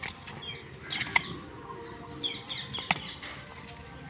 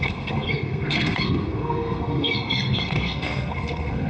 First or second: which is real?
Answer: first